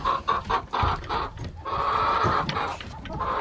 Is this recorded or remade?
recorded